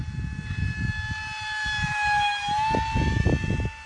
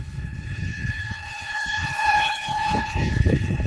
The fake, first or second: second